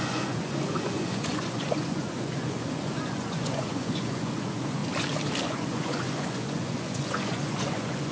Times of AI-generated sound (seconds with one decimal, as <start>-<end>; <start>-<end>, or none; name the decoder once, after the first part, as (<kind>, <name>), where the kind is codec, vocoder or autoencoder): 0.0-4.8 (vocoder, Vocos); 5.4-8.1